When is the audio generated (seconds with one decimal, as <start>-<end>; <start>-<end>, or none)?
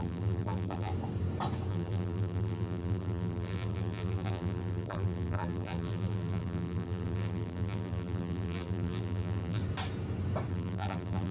0.0-0.9; 1.7-9.6; 10.5-11.3